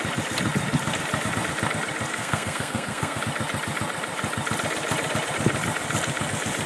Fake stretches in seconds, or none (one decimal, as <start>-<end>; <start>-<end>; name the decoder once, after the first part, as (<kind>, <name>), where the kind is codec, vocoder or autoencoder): 2.1-3.2 (codec, SNAC)